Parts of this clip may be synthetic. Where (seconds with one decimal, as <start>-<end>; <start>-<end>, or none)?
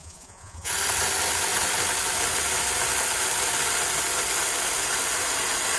0.0-0.7